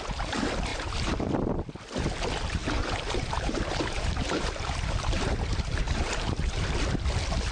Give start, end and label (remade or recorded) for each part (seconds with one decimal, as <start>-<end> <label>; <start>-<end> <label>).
0.0-0.7 recorded; 0.7-1.2 remade; 1.2-2.6 recorded; 2.6-6.7 remade; 6.7-7.5 recorded